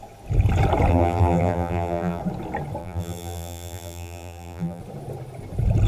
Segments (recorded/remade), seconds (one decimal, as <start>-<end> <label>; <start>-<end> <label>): 0.0-0.9 recorded; 0.9-2.2 remade; 2.2-2.8 recorded; 2.8-4.8 remade; 4.8-5.9 recorded